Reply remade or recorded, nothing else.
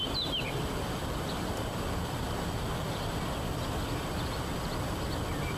recorded